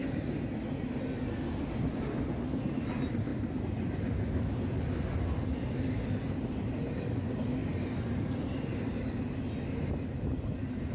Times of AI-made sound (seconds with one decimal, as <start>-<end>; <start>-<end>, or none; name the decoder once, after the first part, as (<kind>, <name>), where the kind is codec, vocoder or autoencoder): none